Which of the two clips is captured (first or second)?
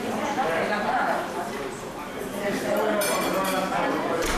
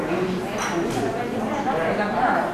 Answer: second